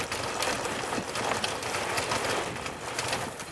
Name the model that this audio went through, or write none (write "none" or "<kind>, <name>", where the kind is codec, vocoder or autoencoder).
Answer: none